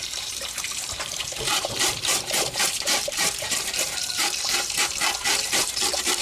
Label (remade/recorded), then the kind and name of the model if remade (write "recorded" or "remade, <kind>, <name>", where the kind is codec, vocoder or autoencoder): remade, vocoder, BigVGAN v2